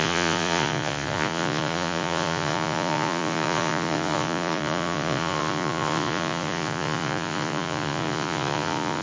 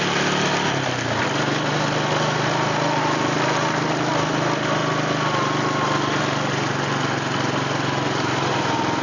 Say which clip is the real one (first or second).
second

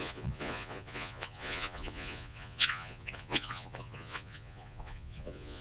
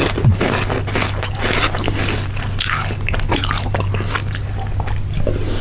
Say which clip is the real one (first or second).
second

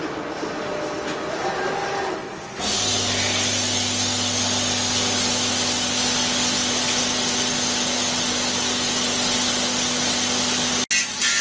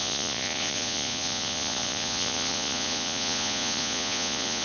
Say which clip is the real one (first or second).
first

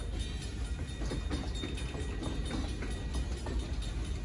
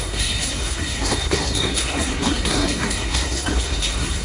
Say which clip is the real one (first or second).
first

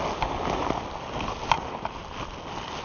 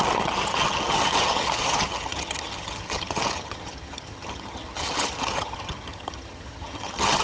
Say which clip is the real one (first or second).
first